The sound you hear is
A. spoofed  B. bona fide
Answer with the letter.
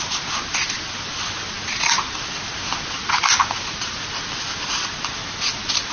B